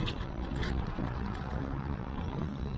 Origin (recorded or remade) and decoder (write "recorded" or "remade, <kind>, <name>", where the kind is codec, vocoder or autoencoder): remade, vocoder, WaveNeXt